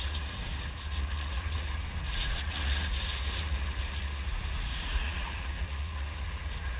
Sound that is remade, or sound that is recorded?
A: remade